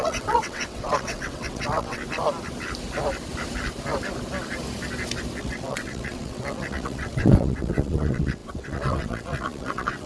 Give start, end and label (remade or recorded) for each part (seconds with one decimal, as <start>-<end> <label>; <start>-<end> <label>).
0.0-2.0 remade; 2.0-5.4 recorded; 5.4-10.1 remade